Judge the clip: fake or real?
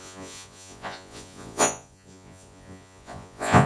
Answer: fake